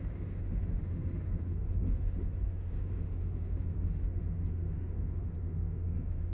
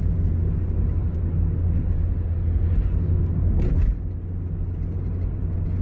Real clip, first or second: second